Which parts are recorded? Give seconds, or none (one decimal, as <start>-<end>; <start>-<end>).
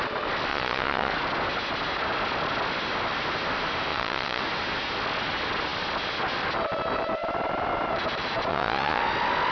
0.0-0.5; 1.1-3.9; 4.4-8.5; 9.0-9.5